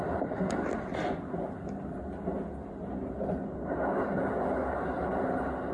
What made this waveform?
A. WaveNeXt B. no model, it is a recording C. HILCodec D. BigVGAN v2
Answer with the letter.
B